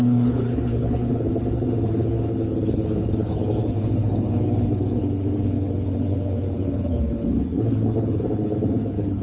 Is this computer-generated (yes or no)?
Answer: yes